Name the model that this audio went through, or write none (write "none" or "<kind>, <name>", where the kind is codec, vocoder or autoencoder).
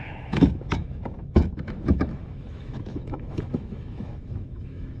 autoencoder, DAC-VAE